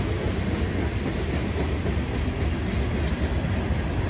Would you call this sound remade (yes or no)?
no